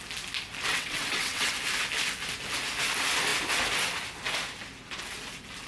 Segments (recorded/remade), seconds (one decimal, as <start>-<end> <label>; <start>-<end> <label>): 0.0-0.7 recorded; 0.7-1.5 remade; 1.5-5.7 recorded